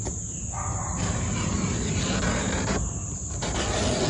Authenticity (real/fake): real